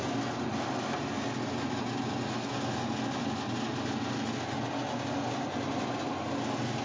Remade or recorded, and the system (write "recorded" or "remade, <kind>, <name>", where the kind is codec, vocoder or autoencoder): recorded